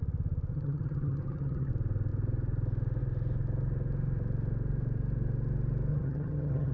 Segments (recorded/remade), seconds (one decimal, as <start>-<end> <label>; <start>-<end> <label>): 0.0-0.5 recorded; 0.5-1.7 remade; 1.7-5.9 recorded; 5.9-6.7 remade